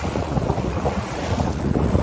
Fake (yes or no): yes